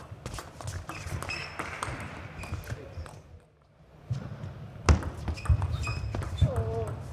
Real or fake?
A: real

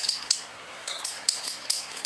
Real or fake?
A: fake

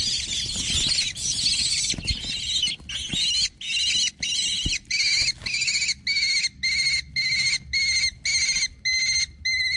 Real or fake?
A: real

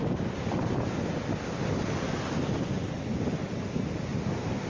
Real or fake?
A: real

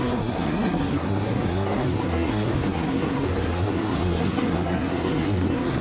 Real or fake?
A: fake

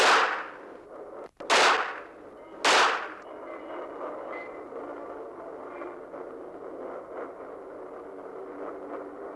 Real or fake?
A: real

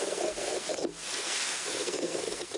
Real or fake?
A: fake